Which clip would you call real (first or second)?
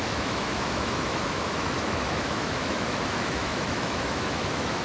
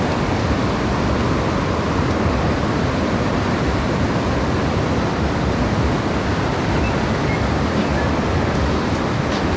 second